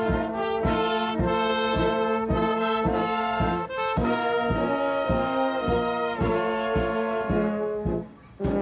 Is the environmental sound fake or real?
fake